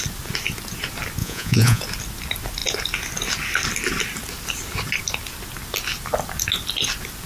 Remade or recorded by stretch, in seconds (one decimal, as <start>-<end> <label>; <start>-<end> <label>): 0.0-1.2 recorded; 1.2-1.8 remade; 1.8-7.3 recorded